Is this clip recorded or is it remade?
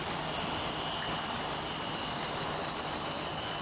recorded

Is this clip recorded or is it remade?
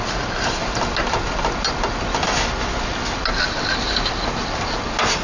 recorded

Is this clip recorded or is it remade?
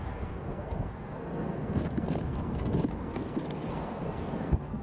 remade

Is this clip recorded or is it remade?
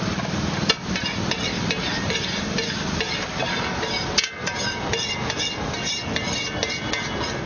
recorded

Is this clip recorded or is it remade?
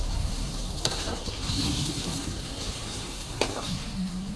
remade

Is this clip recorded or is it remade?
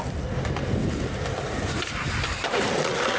recorded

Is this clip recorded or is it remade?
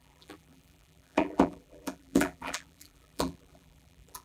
remade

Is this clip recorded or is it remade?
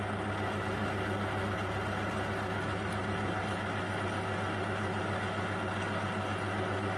recorded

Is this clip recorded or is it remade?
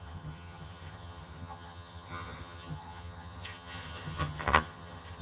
remade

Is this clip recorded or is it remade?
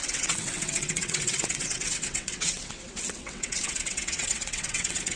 remade